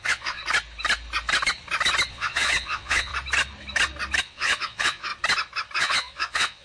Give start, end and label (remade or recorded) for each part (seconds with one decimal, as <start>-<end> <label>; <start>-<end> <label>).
0.0-0.4 remade; 0.4-2.1 recorded; 2.1-3.1 remade; 3.1-4.2 recorded; 4.2-5.1 remade; 5.1-5.8 recorded; 5.8-6.6 remade